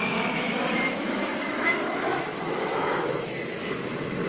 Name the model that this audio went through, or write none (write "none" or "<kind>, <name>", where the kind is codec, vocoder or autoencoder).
autoencoder, DAC-VAE